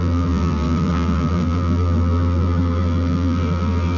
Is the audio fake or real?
fake